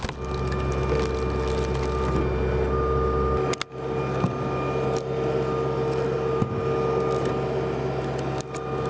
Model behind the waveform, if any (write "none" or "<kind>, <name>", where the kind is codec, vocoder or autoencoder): none